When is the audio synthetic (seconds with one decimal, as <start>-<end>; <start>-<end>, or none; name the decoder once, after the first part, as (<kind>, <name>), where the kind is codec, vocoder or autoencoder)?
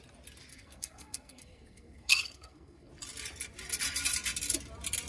0.5-2.9 (codec, SNAC)